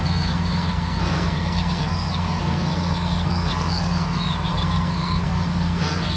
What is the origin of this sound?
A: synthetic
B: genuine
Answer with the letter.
A